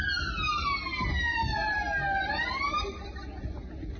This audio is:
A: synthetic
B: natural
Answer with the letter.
B